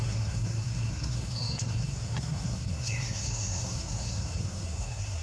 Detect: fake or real fake